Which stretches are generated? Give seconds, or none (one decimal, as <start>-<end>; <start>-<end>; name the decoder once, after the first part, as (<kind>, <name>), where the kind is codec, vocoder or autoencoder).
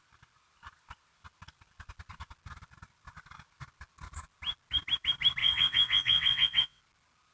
5.4-6.8 (vocoder, WaveNeXt)